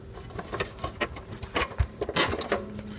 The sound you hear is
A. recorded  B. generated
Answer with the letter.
A